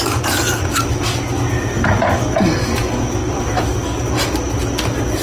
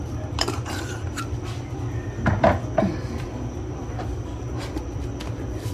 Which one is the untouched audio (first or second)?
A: first